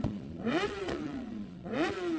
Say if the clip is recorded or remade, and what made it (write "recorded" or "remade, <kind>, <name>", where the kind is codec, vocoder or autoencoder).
remade, vocoder, Vocos